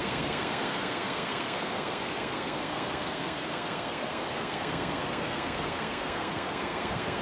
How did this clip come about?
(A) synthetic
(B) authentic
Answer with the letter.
A